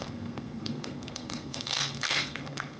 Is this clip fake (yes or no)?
yes